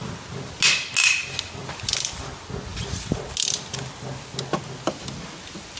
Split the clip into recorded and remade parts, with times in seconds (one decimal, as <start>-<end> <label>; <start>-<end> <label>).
0.0-5.8 recorded